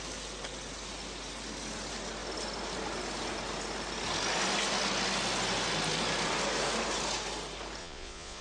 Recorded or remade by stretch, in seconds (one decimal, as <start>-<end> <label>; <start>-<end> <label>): 0.0-7.8 recorded; 7.8-8.4 remade